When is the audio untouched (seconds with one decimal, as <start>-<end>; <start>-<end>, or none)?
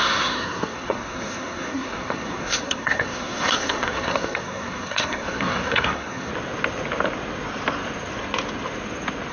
6.3-9.3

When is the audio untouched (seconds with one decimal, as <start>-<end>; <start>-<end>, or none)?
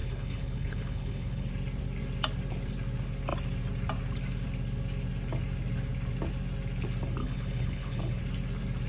1.5-7.2; 8.2-8.9